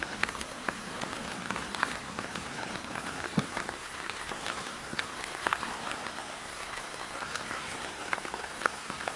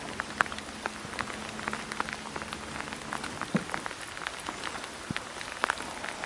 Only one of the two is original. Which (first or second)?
second